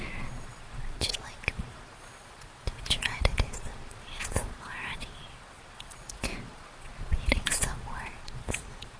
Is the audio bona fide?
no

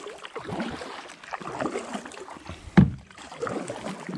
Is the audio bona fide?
yes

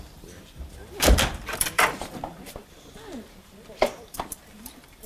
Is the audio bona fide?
no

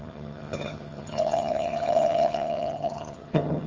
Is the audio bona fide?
no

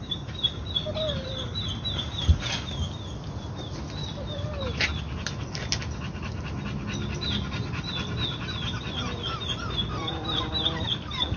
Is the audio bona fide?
yes